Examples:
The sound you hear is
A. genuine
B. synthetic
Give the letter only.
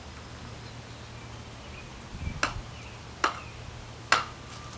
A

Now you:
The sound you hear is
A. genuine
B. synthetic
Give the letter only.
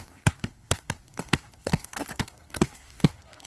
B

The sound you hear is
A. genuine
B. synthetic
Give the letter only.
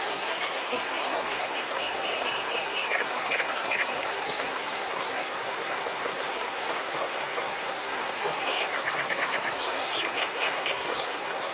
B